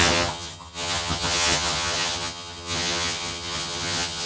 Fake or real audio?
fake